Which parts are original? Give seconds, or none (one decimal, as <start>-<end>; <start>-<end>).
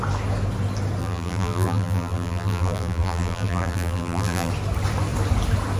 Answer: 0.0-1.0; 4.5-5.8